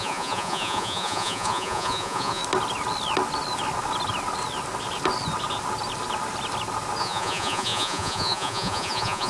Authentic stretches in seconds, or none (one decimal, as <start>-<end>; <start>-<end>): 2.4-7.0